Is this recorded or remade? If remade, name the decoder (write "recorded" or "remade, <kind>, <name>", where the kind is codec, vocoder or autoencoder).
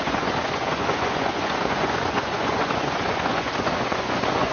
remade, vocoder, Vocos